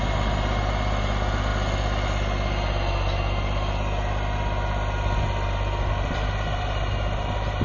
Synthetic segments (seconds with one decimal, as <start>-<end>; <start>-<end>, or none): none